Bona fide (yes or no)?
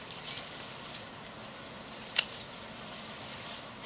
yes